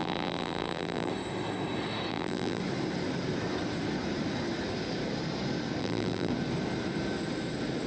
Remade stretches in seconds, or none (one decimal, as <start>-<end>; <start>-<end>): 0.0-1.1; 2.1-2.6; 5.8-6.3